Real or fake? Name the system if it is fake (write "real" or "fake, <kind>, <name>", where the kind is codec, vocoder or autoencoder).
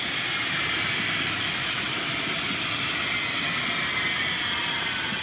real